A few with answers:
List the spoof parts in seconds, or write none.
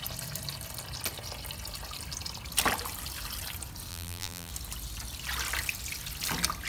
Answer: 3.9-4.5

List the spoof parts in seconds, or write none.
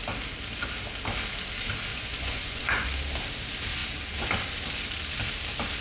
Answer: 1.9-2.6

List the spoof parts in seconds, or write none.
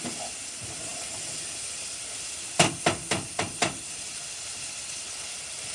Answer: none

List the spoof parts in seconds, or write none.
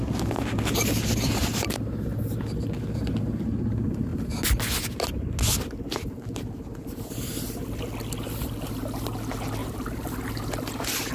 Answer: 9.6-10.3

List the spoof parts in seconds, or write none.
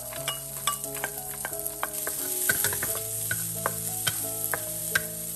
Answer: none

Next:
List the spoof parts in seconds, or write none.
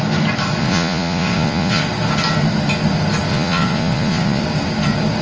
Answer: 0.6-1.8; 3.3-4.4